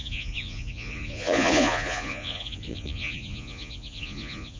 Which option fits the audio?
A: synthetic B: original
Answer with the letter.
A